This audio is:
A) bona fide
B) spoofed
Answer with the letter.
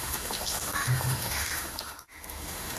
B